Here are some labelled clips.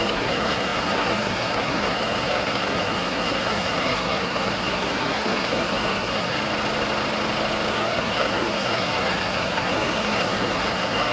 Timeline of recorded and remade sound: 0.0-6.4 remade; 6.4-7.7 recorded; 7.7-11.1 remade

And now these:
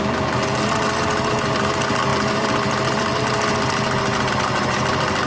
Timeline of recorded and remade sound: 0.0-5.3 recorded

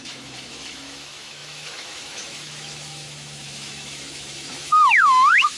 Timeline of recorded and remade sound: 0.0-5.6 remade

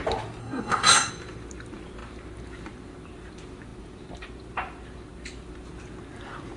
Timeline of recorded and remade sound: 0.0-0.4 recorded; 0.4-1.1 remade; 1.1-6.6 recorded